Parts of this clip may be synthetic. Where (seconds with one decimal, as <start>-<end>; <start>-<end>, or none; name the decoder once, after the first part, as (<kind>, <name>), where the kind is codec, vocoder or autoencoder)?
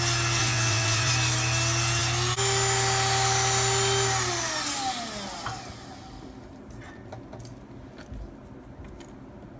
0.4-1.1 (vocoder, WaveNeXt)